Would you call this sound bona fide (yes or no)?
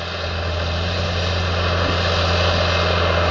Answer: yes